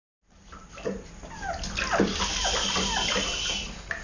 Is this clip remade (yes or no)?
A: no